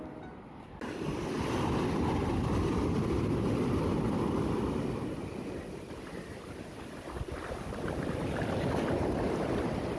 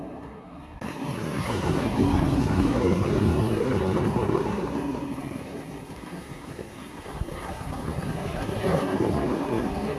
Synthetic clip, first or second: second